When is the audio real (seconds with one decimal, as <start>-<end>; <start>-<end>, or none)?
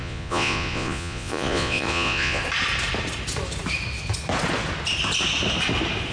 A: 2.4-6.1